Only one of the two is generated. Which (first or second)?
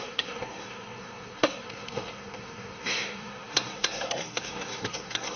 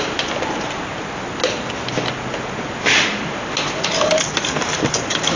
first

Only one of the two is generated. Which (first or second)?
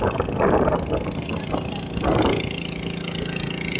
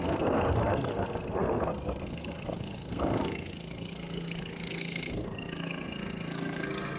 second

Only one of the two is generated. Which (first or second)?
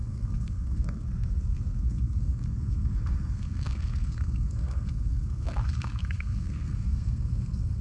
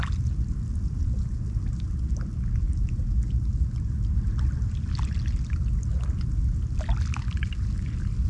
first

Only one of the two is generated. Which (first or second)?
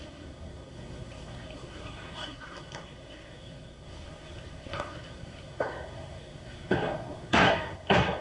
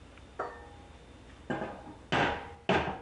first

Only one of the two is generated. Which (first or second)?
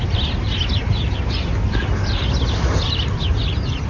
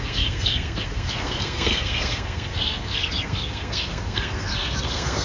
second